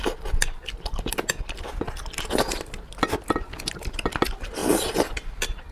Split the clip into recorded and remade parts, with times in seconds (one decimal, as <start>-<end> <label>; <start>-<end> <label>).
0.0-5.7 recorded